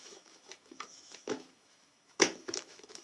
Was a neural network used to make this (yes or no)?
yes